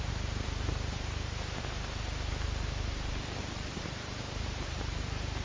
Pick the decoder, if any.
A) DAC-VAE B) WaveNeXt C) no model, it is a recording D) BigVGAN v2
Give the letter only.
D